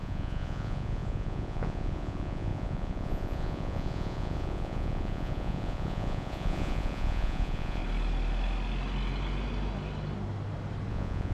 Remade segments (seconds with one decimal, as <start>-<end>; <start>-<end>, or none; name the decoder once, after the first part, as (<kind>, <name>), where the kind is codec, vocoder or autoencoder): 0.0-7.8 (vocoder, Vocos); 10.9-11.3